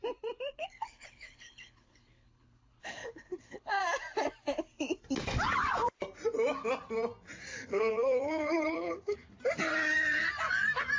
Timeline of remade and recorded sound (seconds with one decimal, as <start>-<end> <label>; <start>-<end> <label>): 0.0-0.5 recorded; 0.5-3.7 remade; 3.7-7.5 recorded; 7.5-9.3 remade; 9.3-11.0 recorded